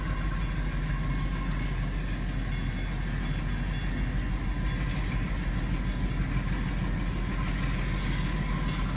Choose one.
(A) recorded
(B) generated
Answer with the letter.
A